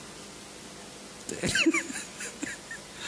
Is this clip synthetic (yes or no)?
no